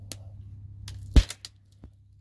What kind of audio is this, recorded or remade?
recorded